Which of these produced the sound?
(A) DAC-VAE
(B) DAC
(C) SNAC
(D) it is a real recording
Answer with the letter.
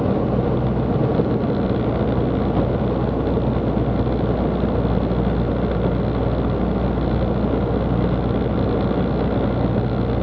D